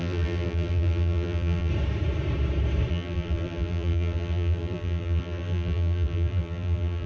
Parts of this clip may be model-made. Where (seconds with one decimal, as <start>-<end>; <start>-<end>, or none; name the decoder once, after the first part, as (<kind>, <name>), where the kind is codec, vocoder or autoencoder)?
0.0-1.7 (vocoder, BigVGAN v2); 2.9-7.1